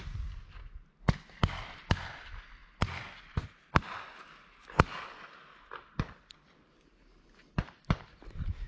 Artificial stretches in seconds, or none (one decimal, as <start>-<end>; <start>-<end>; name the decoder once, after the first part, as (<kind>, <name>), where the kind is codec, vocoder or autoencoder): none